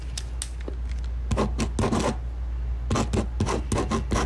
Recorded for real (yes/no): yes